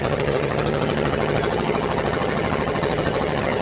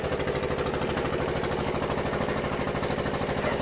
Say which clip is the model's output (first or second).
first